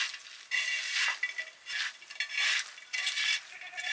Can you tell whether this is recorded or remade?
recorded